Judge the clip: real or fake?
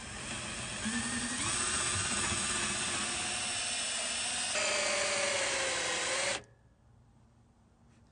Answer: real